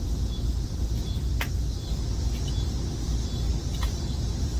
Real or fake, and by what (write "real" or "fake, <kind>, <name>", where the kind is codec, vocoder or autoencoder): real